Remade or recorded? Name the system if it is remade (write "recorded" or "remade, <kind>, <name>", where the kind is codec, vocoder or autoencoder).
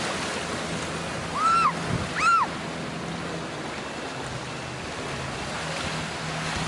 recorded